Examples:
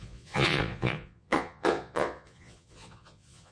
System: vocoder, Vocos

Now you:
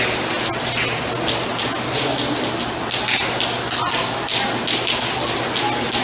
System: none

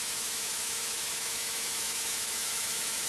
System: autoencoder, DAC-VAE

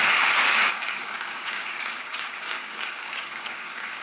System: codec, DAC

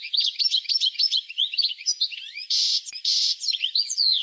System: vocoder, Vocos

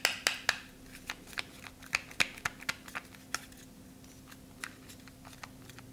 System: none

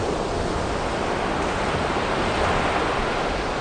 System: none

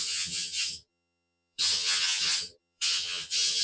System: vocoder, HiFi-GAN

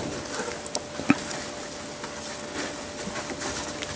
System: none